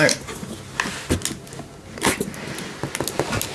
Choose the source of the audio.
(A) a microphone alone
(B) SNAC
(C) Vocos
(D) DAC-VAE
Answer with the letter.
A